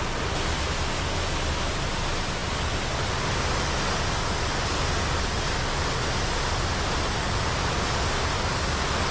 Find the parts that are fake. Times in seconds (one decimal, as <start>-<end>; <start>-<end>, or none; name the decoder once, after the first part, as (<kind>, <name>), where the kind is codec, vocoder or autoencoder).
none

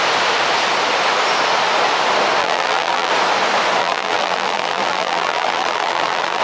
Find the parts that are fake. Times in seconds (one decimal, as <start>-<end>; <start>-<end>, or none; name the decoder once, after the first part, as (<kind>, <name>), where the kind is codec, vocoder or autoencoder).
2.4-3.1 (vocoder, BigVGAN v2); 3.8-6.4

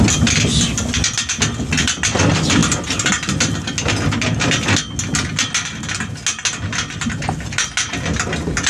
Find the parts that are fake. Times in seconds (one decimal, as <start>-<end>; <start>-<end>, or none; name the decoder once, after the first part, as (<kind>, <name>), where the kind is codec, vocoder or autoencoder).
none

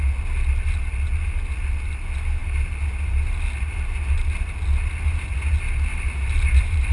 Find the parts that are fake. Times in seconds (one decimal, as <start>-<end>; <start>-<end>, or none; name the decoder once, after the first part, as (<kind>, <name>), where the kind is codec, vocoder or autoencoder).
5.9-6.9 (vocoder, BigVGAN v2)

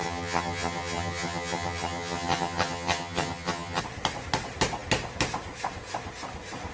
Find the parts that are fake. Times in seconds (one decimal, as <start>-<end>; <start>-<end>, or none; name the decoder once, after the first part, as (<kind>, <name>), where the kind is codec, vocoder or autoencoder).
0.0-3.8 (vocoder, HiFi-GAN)